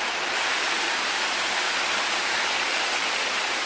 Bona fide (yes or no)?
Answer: yes